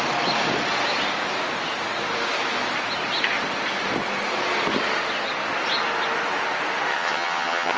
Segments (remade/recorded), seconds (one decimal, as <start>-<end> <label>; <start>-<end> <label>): 0.0-6.9 recorded; 6.9-7.8 remade